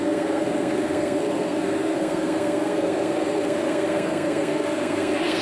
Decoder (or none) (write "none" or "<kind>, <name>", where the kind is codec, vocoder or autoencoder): codec, SNAC